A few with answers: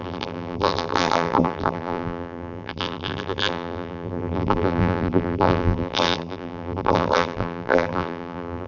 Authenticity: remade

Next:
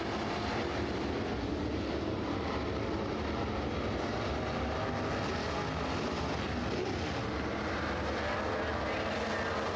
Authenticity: recorded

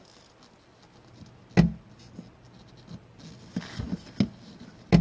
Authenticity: recorded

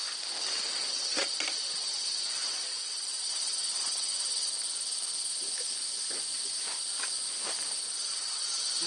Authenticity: remade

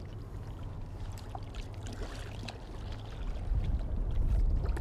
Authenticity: recorded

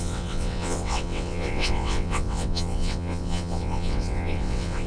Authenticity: remade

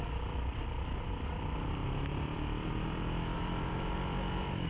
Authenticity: remade